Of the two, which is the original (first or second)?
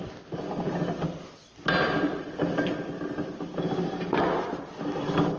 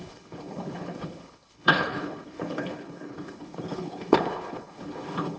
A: first